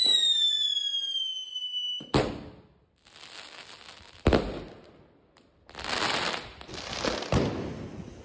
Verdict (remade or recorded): recorded